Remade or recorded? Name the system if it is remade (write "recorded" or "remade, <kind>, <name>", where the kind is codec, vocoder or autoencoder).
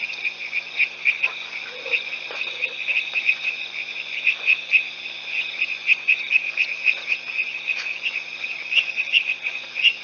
remade, vocoder, Vocos